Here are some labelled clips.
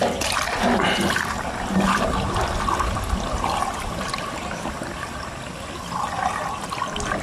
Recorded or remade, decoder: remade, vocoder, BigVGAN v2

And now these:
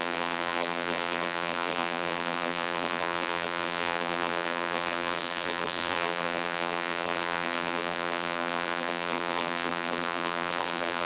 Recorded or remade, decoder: remade, vocoder, BigVGAN v2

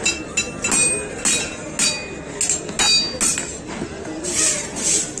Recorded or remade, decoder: recorded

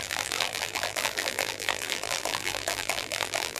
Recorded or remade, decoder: remade, vocoder, BigVGAN v2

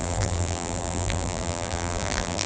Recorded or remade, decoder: remade, vocoder, BigVGAN v2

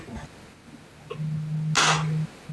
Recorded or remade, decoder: recorded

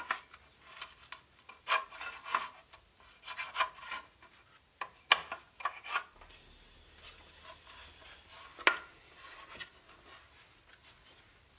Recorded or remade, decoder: recorded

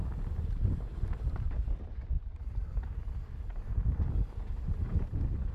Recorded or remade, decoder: remade, vocoder, BigVGAN v2